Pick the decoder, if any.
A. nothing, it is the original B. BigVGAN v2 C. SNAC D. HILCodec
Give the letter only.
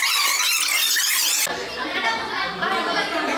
A